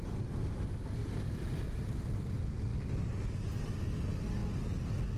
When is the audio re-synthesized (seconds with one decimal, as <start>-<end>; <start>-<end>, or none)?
none